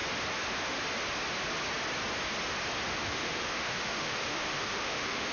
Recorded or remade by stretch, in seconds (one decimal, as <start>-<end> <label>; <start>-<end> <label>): 0.0-2.9 recorded; 2.9-5.3 remade